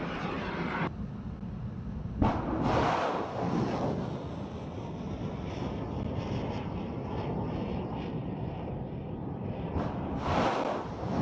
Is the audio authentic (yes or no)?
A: no